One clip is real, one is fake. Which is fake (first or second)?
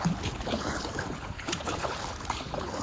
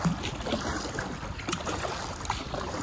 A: first